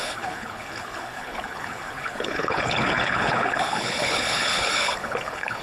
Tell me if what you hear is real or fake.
fake